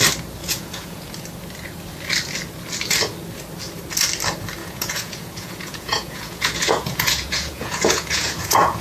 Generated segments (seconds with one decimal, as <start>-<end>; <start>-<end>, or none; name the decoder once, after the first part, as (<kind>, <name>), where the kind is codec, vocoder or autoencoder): 0.4-1.1 (vocoder, Vocos); 4.6-8.8